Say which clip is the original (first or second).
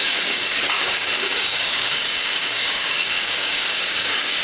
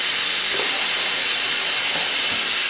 second